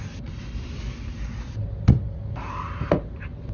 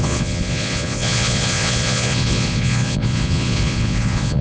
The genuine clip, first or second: first